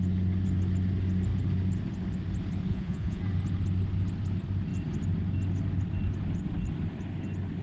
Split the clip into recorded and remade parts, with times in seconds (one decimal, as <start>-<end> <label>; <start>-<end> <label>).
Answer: 0.0-2.7 recorded; 2.7-3.2 remade; 3.2-7.6 recorded